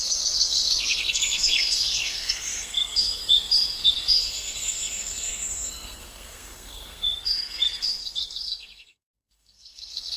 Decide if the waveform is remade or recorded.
remade